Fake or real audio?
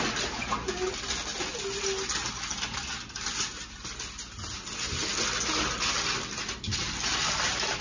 real